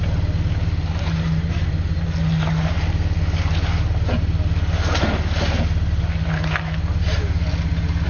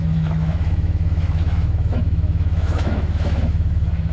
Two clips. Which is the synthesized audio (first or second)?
second